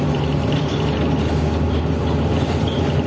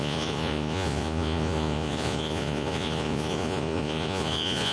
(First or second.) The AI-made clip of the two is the second